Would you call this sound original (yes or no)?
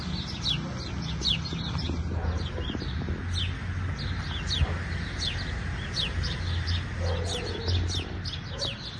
yes